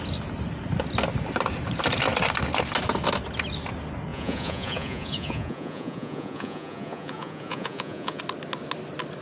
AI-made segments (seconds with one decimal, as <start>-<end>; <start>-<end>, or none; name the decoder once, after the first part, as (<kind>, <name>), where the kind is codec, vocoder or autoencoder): 4.1-8.2 (vocoder, Vocos)